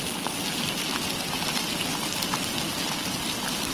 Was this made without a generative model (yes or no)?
yes